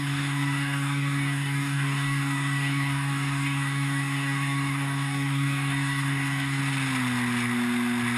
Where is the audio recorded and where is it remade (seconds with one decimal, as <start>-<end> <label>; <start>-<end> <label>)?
0.0-6.6 remade; 6.6-8.2 recorded